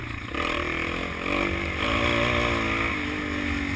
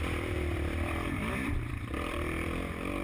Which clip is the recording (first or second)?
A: first